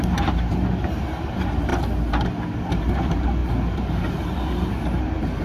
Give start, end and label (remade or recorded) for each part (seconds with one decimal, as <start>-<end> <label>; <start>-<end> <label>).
0.0-1.7 remade; 1.7-2.7 recorded; 2.7-5.4 remade